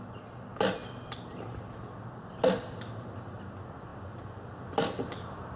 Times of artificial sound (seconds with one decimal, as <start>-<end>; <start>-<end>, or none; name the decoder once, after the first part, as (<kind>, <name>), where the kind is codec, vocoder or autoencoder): none